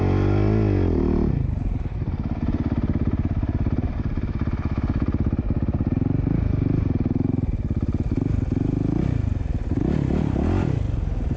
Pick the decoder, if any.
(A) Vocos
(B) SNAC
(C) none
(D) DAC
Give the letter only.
C